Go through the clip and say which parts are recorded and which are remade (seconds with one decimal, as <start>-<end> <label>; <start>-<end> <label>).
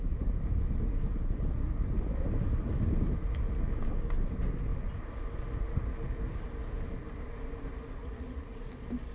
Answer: 0.0-8.0 recorded; 8.0-8.7 remade; 8.7-9.1 recorded